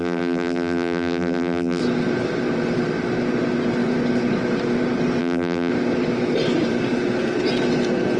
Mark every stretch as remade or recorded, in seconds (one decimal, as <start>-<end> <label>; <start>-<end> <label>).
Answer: 0.0-1.8 remade; 1.8-5.2 recorded; 5.2-5.7 remade; 5.7-8.2 recorded